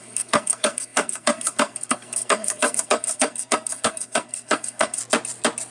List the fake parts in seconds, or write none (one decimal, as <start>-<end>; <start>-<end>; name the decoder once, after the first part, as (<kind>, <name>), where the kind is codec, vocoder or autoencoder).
0.0-5.0 (codec, SNAC)